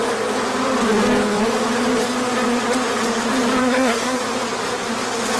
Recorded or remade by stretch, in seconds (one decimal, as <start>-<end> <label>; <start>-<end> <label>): 0.0-3.6 recorded; 3.6-4.2 remade; 4.2-5.4 recorded